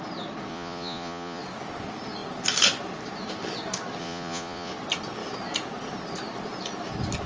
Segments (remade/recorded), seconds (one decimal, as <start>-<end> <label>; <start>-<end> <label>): 0.0-0.5 recorded; 0.5-1.4 remade; 1.4-4.0 recorded; 4.0-4.7 remade; 4.7-7.3 recorded